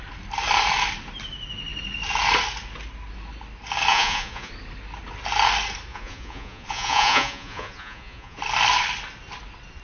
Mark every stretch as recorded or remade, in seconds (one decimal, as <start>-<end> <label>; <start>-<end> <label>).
0.0-3.9 recorded; 3.9-4.5 remade; 4.5-5.9 recorded; 5.9-8.4 remade; 8.4-9.8 recorded